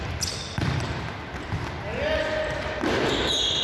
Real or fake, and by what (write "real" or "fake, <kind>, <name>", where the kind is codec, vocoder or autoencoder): real